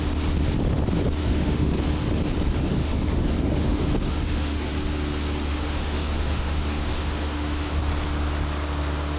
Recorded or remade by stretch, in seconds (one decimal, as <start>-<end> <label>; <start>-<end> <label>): 0.0-1.2 recorded; 1.2-1.7 remade; 1.7-2.5 recorded; 2.5-4.7 remade; 4.7-5.5 recorded; 5.5-7.9 remade; 7.9-9.2 recorded